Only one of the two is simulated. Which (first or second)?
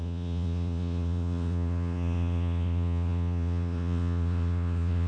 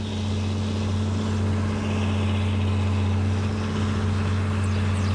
first